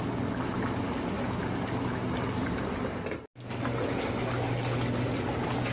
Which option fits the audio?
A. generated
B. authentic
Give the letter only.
B